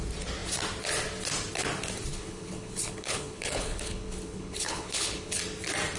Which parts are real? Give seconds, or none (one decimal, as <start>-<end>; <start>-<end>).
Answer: 0.0-2.1; 5.4-6.0